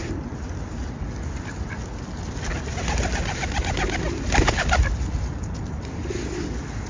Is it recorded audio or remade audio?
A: recorded